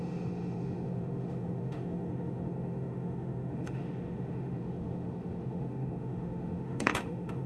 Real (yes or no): no